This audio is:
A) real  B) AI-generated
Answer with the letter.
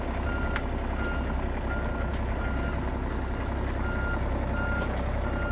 A